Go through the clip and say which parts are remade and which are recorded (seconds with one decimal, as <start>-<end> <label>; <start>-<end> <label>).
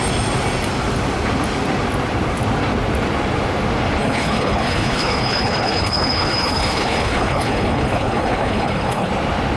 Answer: 0.0-4.0 recorded; 4.0-9.1 remade; 9.1-9.6 recorded